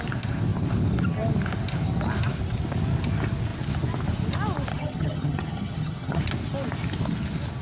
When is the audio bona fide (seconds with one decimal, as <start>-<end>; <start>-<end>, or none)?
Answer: 0.0-4.7; 6.2-7.6